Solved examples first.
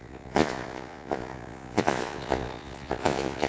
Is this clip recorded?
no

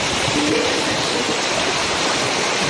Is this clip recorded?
no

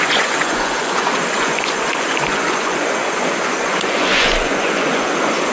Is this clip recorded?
no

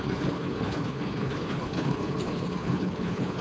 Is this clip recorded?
no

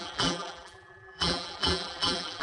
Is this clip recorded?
no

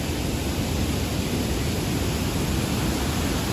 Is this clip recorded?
yes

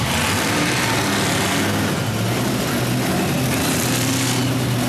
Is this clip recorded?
yes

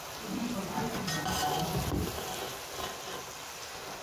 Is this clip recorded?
yes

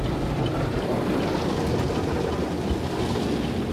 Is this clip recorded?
yes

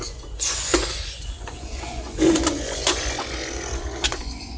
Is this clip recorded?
no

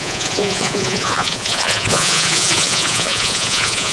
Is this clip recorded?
no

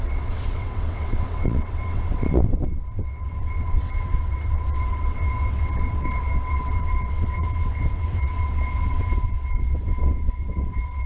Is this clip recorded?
no